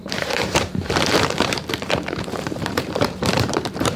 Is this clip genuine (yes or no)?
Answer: no